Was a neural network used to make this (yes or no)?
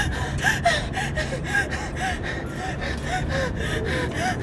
no